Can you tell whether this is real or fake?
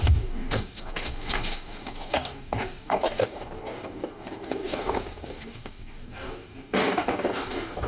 fake